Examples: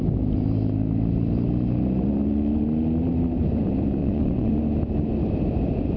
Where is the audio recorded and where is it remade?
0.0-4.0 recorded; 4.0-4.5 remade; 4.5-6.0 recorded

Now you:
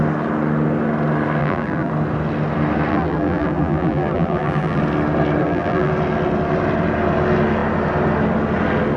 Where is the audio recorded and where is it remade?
0.0-1.4 recorded; 1.4-1.9 remade; 1.9-2.9 recorded; 2.9-4.8 remade; 4.8-5.4 recorded; 5.4-5.9 remade; 5.9-9.0 recorded

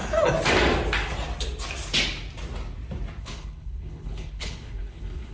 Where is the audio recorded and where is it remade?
0.0-3.2 recorded; 3.2-5.3 remade

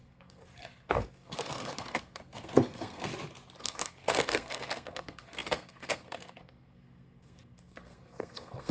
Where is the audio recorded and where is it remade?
0.0-3.1 remade; 3.1-3.6 recorded; 3.6-8.7 remade

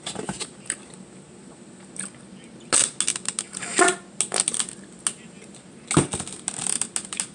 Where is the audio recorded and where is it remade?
0.0-7.3 recorded

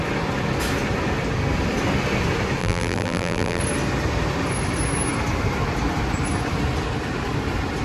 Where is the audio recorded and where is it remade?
0.0-2.6 recorded; 2.6-3.6 remade; 3.6-7.8 recorded

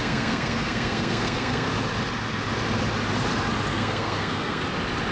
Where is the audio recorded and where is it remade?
0.0-1.7 remade; 1.7-3.7 recorded; 3.7-4.6 remade; 4.6-5.1 recorded

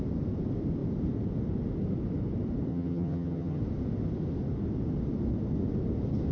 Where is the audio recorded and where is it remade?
0.0-2.7 recorded; 2.7-3.6 remade; 3.6-6.3 recorded